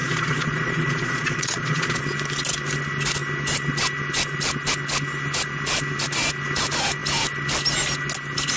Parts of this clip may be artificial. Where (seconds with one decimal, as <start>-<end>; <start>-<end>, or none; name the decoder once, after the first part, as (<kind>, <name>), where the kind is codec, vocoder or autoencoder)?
0.0-2.0 (vocoder, Vocos)